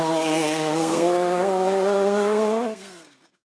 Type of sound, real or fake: fake